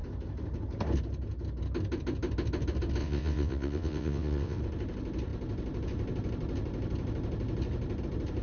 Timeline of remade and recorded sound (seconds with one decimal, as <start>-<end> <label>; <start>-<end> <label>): 0.0-3.0 recorded; 3.0-4.6 remade; 4.6-8.4 recorded